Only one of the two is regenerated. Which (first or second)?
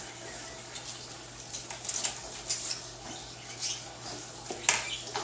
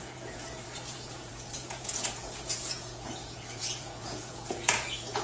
second